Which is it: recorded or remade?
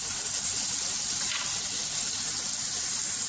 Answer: recorded